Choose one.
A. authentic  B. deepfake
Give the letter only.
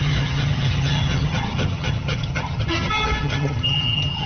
B